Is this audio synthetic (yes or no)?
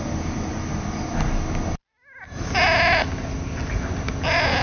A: no